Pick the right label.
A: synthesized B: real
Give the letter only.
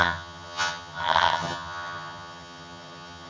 A